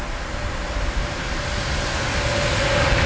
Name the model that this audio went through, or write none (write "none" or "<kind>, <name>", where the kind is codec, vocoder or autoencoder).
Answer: none